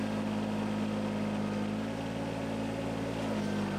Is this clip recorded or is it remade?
recorded